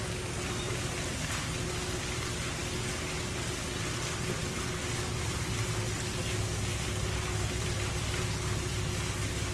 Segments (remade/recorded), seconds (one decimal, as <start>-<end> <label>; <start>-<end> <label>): 0.0-9.5 recorded

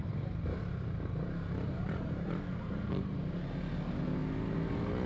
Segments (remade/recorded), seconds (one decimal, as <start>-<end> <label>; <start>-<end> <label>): 0.0-3.1 remade; 3.1-5.1 recorded